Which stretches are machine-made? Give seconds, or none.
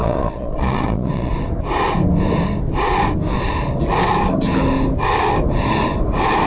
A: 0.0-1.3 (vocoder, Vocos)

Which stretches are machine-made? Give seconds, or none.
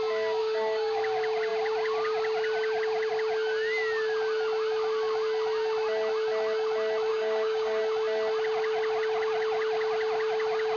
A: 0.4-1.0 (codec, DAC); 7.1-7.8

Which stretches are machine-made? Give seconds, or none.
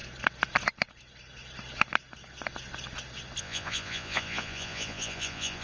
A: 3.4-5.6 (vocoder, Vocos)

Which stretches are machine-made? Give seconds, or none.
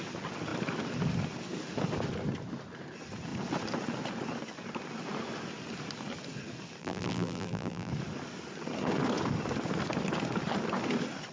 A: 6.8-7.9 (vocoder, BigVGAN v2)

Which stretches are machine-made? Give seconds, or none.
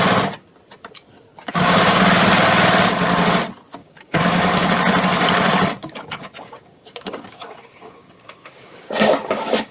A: 1.3-2.0 (codec, DAC); 3.8-4.7; 5.8-9.7